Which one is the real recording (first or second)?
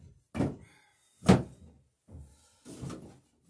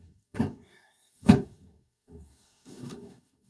first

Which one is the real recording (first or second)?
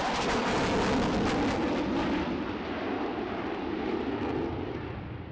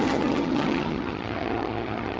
first